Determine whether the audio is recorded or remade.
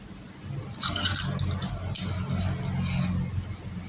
recorded